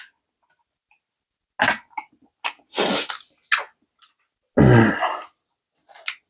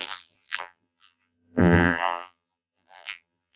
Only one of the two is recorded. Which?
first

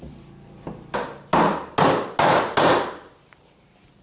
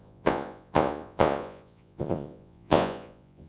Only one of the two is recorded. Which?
first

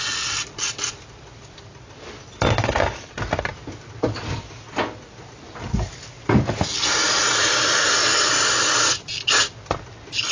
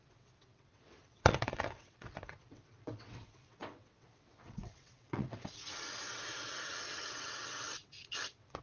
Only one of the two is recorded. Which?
first